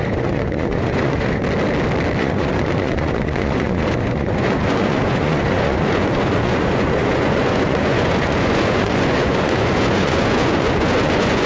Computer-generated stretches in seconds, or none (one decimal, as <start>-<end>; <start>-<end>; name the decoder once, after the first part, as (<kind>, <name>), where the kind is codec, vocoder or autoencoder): 0.0-1.4 (vocoder, Vocos); 2.2-11.5